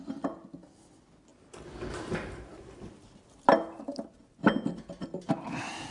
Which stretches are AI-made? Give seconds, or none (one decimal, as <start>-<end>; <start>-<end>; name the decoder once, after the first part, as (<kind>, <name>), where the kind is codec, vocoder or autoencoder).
none